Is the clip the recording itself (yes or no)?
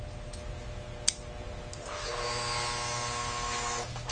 yes